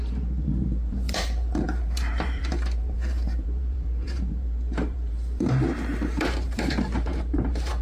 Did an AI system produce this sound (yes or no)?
yes